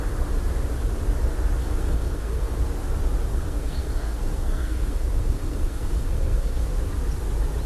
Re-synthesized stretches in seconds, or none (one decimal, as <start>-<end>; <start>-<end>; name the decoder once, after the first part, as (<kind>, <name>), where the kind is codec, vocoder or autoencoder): 1.6-2.6 (codec, SNAC); 3.3-6.7